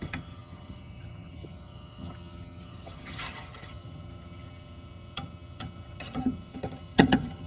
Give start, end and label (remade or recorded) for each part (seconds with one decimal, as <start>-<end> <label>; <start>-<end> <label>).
0.0-7.5 remade

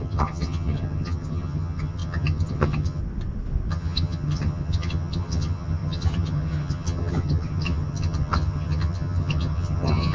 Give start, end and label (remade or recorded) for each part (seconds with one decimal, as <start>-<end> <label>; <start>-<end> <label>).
0.0-3.0 remade; 3.0-3.7 recorded; 3.7-10.1 remade